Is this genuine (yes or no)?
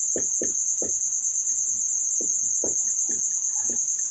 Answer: no